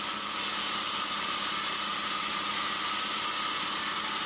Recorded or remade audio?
recorded